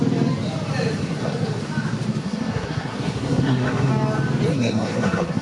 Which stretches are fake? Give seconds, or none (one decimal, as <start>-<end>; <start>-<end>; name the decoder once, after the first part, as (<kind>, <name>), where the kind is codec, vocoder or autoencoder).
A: 1.0-1.6 (codec, SNAC); 2.2-3.9; 4.5-5.4